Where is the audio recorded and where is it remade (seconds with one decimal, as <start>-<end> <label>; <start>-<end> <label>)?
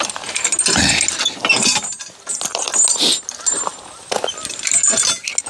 0.0-5.5 recorded